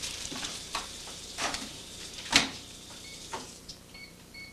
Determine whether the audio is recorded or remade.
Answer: remade